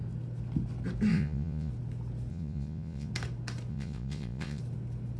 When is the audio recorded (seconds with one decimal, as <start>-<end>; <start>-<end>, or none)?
0.0-1.1; 1.7-2.3; 3.1-3.7; 4.6-5.2

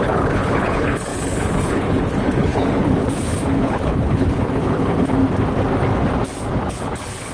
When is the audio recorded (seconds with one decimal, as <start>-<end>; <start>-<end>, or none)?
5.2-6.5

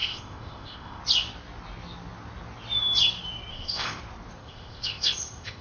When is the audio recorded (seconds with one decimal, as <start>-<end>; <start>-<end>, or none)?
1.0-3.5; 4.0-4.4

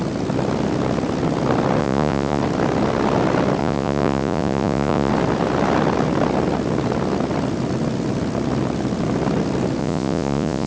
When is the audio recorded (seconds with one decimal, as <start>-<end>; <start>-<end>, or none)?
0.0-1.8; 2.4-3.6; 5.1-9.8